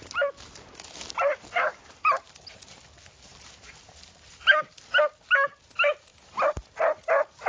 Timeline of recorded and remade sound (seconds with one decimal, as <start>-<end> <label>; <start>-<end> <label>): 0.0-1.7 recorded; 1.7-2.3 remade; 2.3-3.3 recorded; 3.3-4.5 remade; 4.5-6.1 recorded; 6.1-6.9 remade; 6.9-7.5 recorded